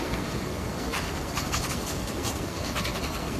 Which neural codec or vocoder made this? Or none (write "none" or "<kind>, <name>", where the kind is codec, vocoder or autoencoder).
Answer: codec, SNAC